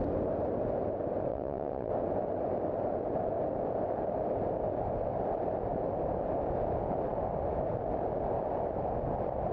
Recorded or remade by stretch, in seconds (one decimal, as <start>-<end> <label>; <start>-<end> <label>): 0.0-1.3 recorded; 1.3-1.9 remade; 1.9-9.5 recorded